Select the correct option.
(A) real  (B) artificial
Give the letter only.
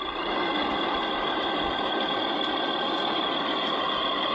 A